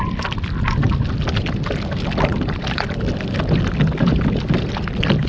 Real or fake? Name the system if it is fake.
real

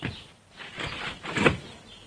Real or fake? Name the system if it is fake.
real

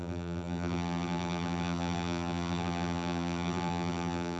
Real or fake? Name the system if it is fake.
fake, vocoder, BigVGAN v2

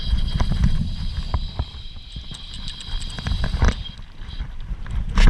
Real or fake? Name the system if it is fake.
real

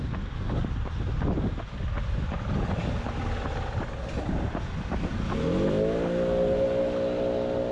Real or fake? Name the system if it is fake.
real